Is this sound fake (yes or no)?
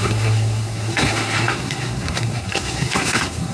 yes